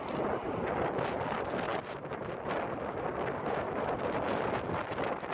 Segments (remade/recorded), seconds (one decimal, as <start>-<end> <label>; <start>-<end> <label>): 0.0-5.3 recorded